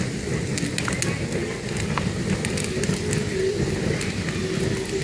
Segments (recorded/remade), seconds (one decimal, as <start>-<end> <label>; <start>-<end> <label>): 0.0-5.0 recorded